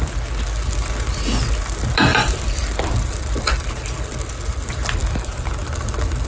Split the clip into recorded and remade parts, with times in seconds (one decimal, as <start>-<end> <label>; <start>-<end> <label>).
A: 0.0-2.1 recorded; 2.1-4.3 remade; 4.3-5.0 recorded; 5.0-5.5 remade; 5.5-6.3 recorded